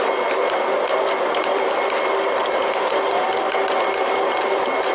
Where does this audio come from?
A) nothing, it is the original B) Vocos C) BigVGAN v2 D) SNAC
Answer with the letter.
A